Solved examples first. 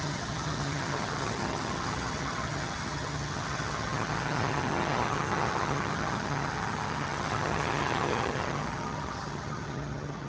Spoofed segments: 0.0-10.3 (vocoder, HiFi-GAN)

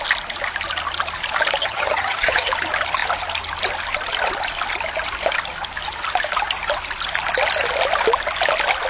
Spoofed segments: 1.6-2.5 (vocoder, HiFi-GAN)

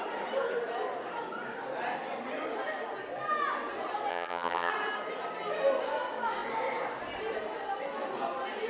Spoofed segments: 4.1-4.7 (vocoder, HiFi-GAN)

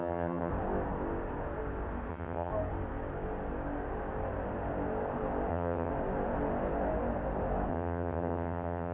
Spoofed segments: 0.0-0.5 (vocoder, HiFi-GAN); 2.1-2.5; 5.5-5.9; 7.7-8.9

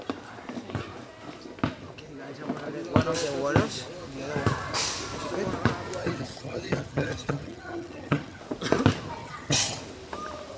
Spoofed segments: 6.0-8.4 (vocoder, HiFi-GAN); 9.2-9.8

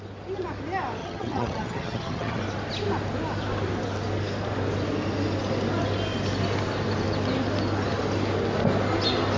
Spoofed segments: 1.0-2.4 (vocoder, HiFi-GAN)

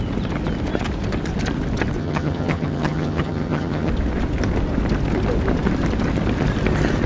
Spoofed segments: 2.0-3.9 (vocoder, HiFi-GAN)